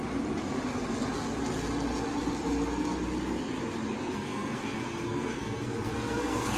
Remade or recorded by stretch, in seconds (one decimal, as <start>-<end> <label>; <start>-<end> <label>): 0.0-4.0 recorded; 4.0-6.6 remade